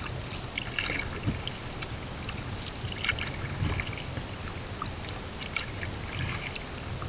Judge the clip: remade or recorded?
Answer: recorded